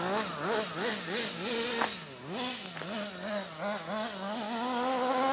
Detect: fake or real real